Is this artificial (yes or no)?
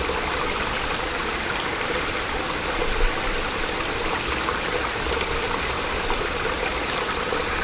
no